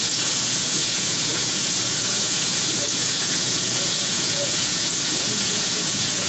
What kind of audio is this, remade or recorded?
remade